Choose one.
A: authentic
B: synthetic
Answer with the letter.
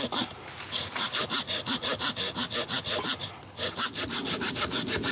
A